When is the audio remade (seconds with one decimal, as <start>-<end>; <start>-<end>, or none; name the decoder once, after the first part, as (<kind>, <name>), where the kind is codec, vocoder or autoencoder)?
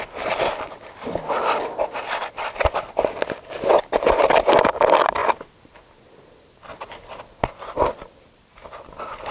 none